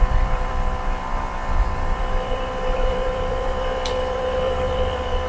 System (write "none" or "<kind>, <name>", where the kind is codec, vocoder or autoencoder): vocoder, BigVGAN v2